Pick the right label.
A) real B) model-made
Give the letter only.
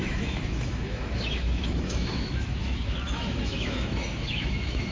B